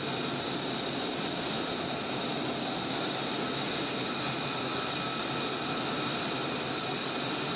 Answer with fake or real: real